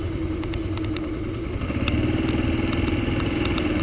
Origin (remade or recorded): recorded